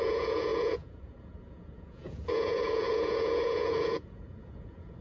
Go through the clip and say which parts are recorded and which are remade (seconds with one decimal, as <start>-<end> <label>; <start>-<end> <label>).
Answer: 0.0-5.0 remade